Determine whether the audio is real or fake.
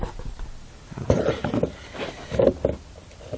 real